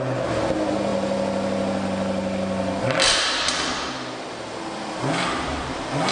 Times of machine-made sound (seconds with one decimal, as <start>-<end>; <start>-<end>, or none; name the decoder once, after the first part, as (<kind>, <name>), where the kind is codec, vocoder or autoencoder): none